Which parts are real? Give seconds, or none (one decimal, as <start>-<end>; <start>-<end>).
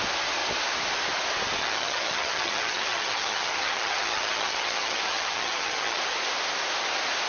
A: 0.0-1.6; 6.0-7.3